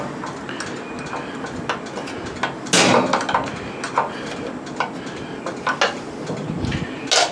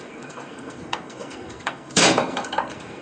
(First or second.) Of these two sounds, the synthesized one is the second